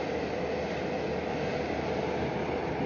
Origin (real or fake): real